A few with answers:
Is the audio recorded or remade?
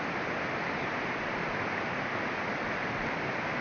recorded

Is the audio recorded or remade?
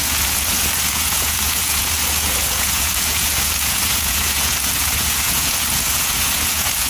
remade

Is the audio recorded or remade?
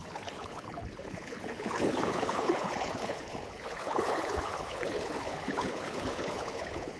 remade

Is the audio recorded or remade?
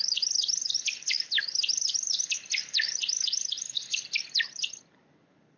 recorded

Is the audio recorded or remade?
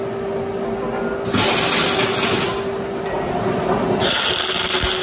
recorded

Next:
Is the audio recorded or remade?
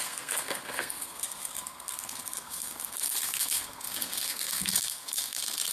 remade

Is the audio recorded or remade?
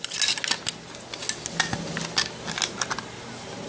recorded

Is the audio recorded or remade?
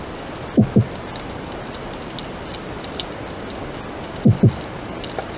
recorded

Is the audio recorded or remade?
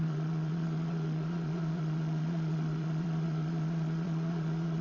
remade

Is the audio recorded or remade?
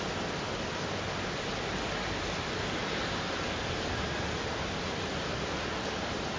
recorded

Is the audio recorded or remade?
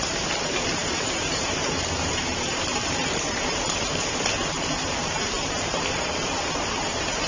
remade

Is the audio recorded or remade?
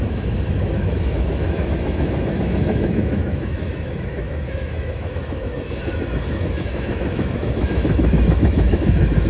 remade